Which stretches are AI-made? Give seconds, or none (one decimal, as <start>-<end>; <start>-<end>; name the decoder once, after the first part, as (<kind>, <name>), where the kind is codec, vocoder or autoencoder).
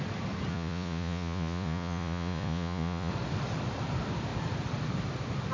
0.5-3.1 (vocoder, Vocos)